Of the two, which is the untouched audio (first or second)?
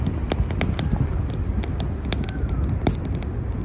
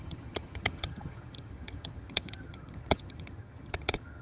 first